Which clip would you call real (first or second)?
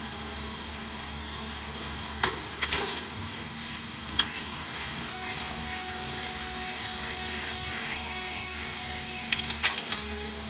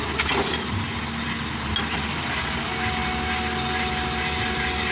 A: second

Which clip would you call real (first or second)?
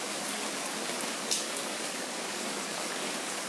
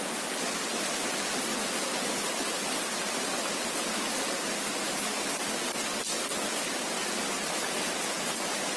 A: second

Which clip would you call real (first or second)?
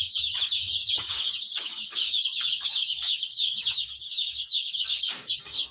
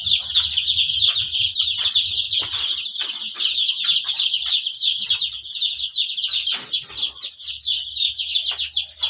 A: second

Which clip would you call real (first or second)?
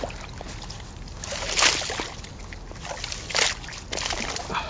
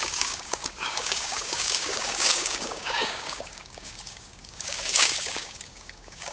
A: first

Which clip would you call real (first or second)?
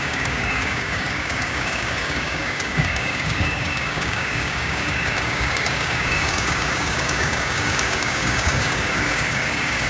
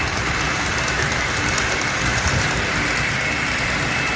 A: second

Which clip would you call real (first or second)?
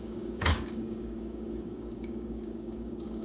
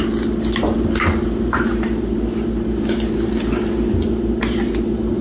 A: second